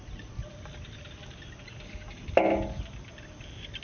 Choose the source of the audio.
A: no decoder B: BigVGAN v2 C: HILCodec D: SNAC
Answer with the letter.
A